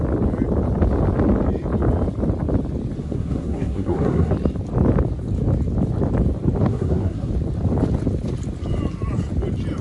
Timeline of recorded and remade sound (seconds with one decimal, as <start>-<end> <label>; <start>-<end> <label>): 0.0-3.0 recorded; 3.0-4.3 remade; 4.3-6.7 recorded; 6.7-7.3 remade; 7.3-9.8 recorded